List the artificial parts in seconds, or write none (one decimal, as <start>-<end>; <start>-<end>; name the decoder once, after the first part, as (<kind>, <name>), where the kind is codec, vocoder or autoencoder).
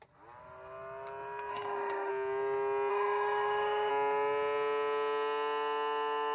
1.5-2.1 (autoencoder, DAC-VAE); 2.9-3.9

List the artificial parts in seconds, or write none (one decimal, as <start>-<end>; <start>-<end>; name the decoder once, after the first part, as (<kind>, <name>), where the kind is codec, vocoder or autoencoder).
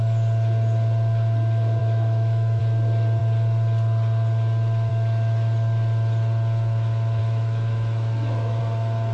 1.8-2.6 (autoencoder, DAC-VAE); 7.2-8.6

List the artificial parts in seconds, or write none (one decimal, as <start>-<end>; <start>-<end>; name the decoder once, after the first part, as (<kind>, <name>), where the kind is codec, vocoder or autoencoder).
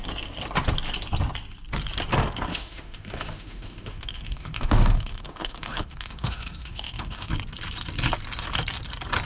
2.5-7.3 (autoencoder, DAC-VAE)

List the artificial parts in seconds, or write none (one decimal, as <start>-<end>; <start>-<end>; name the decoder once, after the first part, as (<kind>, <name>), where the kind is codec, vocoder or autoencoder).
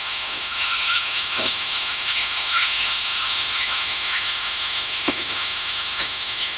0.0-6.6 (autoencoder, DAC-VAE)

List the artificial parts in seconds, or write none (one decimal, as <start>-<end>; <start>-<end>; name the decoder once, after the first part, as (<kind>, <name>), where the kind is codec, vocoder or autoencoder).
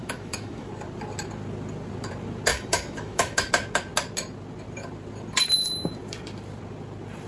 0.0-0.7 (autoencoder, DAC-VAE); 2.5-3.5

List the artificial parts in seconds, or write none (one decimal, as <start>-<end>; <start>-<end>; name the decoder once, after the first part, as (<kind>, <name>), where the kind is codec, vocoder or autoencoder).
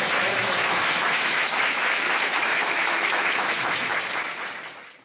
0.0-3.9 (autoencoder, DAC-VAE)